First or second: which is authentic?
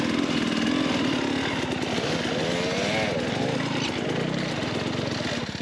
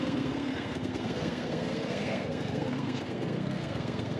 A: first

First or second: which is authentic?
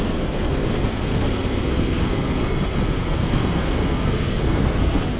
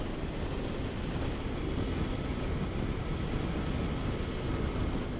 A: second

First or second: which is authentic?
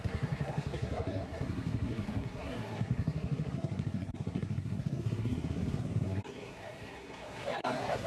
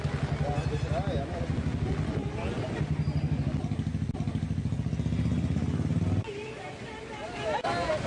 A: second